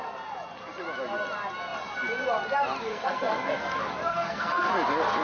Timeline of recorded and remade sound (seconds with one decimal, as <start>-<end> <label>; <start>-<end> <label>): 0.0-2.9 recorded; 2.9-3.6 remade; 3.6-4.1 recorded; 4.1-4.7 remade; 4.7-5.2 recorded